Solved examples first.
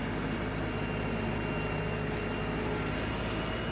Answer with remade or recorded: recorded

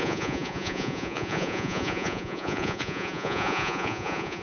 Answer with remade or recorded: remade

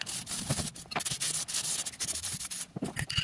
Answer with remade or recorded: recorded